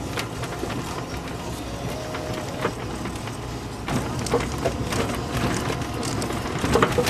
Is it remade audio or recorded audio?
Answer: recorded